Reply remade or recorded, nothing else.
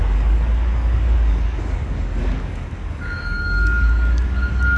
remade